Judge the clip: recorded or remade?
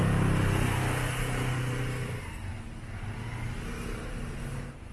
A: recorded